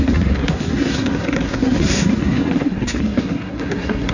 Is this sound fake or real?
fake